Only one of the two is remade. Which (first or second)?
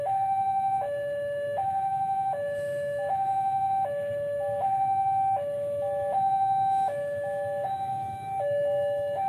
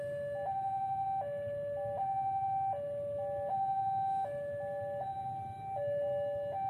first